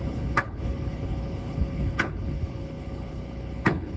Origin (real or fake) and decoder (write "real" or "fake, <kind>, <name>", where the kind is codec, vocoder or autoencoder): fake, codec, HILCodec